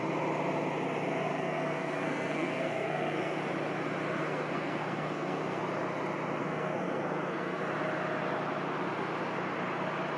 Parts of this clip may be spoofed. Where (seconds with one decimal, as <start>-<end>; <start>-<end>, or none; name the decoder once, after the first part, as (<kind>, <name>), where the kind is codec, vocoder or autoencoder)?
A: 1.3-3.4 (codec, SNAC); 4.2-5.6; 6.4-7.6